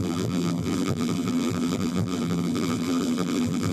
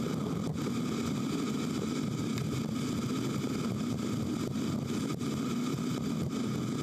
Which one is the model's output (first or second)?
first